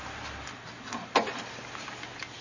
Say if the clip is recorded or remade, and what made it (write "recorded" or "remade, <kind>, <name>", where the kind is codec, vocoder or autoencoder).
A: recorded